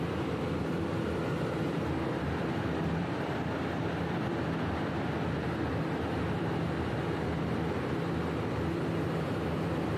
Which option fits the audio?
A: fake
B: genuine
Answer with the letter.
A